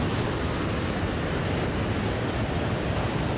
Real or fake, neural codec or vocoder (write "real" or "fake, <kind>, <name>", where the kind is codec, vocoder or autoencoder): real